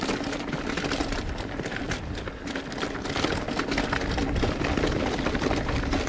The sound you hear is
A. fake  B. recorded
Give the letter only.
B